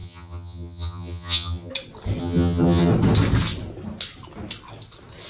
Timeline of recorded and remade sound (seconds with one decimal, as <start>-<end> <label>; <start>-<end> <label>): 0.0-1.7 remade; 1.7-2.2 recorded; 2.2-2.9 remade; 2.9-5.3 recorded